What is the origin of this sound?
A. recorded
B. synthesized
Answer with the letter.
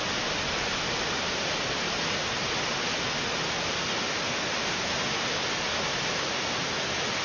A